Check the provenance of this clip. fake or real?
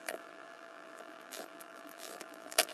fake